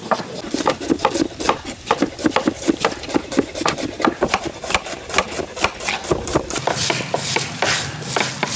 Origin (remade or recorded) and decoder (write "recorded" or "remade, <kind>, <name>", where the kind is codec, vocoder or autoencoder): recorded